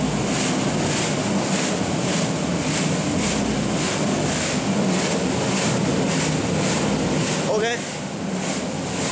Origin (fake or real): real